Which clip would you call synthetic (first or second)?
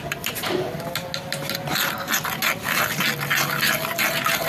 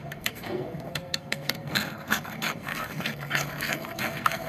second